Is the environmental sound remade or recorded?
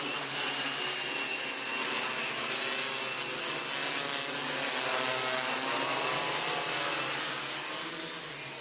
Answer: recorded